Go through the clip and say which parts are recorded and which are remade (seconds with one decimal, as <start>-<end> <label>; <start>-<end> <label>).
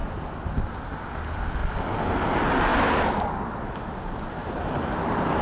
0.0-5.4 recorded